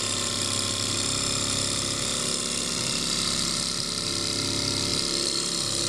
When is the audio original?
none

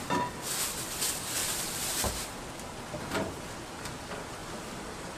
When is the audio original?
0.0-1.4; 2.1-4.4

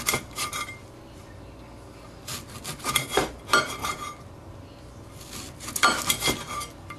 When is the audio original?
0.0-7.0

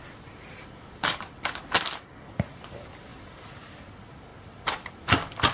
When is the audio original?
0.0-3.1; 3.7-4.3; 4.9-5.5

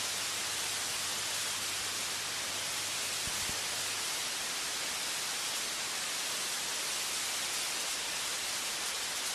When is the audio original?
0.0-9.3

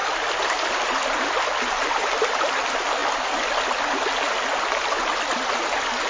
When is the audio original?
2.4-6.1

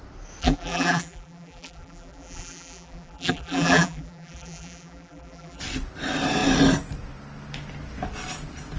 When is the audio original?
0.0-0.4; 5.6-8.8

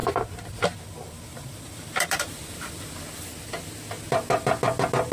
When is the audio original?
0.0-1.3; 3.2-5.1